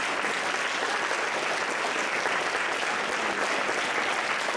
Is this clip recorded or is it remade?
recorded